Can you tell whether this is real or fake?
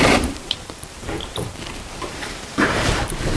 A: fake